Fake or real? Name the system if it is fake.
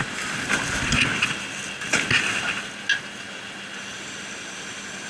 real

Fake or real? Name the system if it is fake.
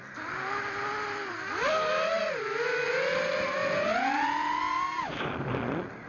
real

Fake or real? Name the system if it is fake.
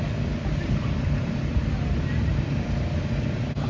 real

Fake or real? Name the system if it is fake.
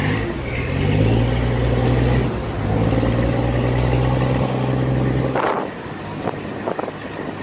real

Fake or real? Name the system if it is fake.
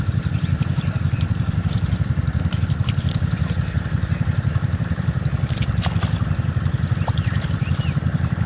fake, vocoder, BigVGAN v2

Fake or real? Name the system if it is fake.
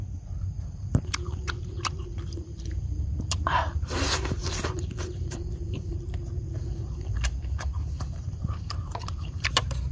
fake, vocoder, BigVGAN v2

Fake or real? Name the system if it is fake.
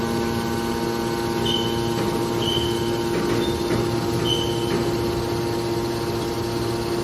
real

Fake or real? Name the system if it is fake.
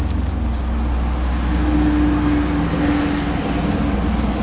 real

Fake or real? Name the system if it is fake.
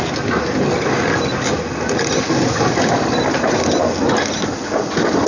real